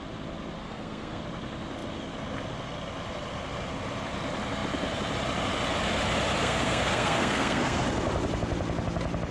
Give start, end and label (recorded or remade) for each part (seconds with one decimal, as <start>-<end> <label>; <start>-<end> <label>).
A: 0.0-0.6 recorded; 0.6-1.2 remade; 1.2-6.4 recorded; 6.4-7.8 remade; 7.8-9.3 recorded